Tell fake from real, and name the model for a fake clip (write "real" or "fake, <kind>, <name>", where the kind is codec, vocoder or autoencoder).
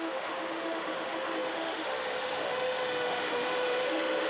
fake, autoencoder, DAC-VAE